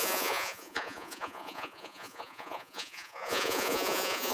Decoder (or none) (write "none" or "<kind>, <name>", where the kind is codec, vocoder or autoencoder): vocoder, Vocos